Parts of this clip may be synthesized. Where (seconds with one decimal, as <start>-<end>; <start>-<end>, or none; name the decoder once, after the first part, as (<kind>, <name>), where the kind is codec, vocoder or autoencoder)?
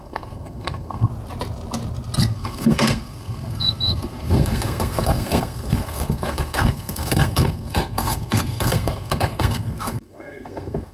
0.0-1.1 (codec, SNAC); 2.2-10.9